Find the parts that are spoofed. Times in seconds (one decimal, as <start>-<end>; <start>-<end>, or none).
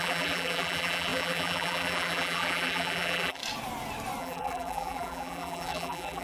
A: 0.0-3.4; 4.2-6.2